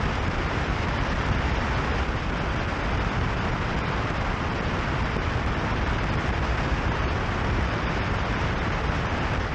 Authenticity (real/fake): real